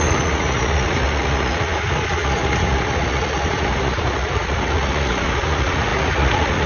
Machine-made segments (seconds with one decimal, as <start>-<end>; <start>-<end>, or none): 0.0-6.7

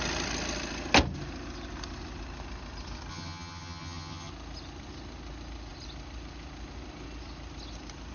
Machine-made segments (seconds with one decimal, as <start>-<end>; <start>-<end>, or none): 3.1-4.3

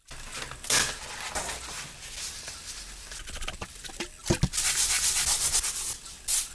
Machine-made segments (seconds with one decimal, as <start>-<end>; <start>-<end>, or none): none

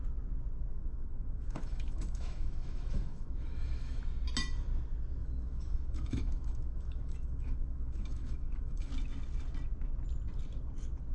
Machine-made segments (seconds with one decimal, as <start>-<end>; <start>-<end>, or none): 0.7-4.0; 5.2-8.9

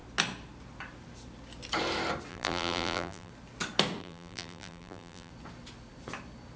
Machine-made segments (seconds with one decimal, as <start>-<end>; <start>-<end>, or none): 2.3-3.3; 4.0-5.3